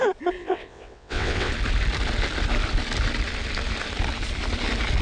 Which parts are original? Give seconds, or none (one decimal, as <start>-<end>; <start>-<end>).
0.0-0.4; 1.5-5.0